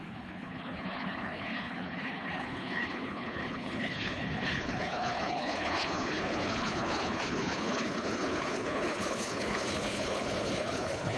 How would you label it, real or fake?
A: fake